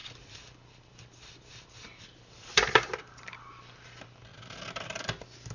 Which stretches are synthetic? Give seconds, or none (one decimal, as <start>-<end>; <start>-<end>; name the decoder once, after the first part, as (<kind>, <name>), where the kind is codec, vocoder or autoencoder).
0.0-4.3 (vocoder, BigVGAN v2)